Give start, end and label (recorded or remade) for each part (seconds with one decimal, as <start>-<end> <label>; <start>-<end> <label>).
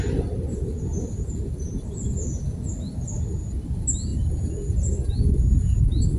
0.0-6.2 recorded